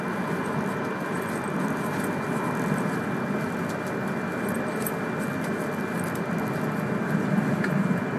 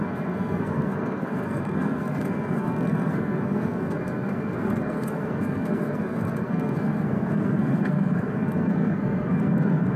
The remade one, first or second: second